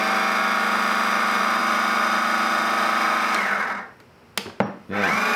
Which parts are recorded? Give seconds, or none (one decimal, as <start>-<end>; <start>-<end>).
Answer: 0.0-5.4